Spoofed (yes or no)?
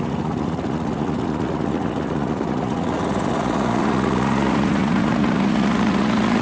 yes